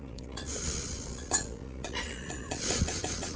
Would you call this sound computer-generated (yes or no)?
yes